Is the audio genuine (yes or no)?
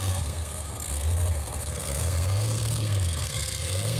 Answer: no